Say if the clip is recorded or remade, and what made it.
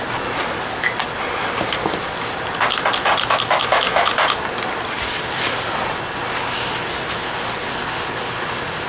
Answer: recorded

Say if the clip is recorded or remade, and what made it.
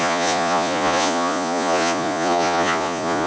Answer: remade, vocoder, Vocos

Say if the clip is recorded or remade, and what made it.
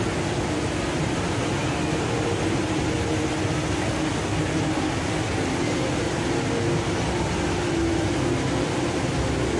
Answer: recorded